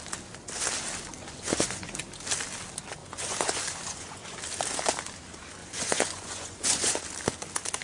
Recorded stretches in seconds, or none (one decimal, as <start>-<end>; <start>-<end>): 0.0-1.2; 2.0-3.0; 4.4-5.6; 7.0-7.8